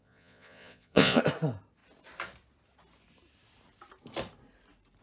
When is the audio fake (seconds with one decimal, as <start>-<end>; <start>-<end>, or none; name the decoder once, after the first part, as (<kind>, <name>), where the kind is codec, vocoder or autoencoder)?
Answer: 0.0-1.2 (vocoder, Vocos)